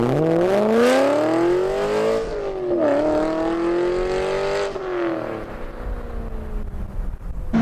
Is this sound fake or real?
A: real